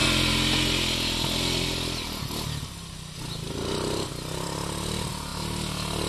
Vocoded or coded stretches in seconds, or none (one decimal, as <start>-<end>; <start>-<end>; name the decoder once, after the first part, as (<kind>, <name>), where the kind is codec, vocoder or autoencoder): none